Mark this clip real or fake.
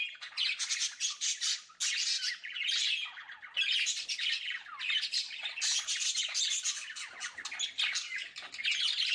real